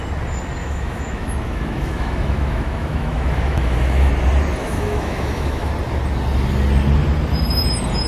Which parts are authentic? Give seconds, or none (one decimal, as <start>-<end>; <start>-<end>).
0.0-0.6; 4.1-4.6; 5.7-8.1